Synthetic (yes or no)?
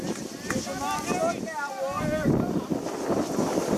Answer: no